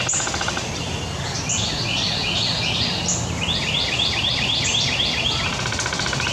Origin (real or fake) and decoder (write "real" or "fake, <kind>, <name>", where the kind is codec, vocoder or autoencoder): real